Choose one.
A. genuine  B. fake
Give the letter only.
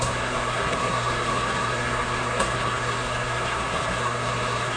B